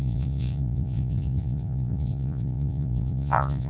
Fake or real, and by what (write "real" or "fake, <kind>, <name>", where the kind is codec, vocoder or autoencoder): fake, vocoder, Vocos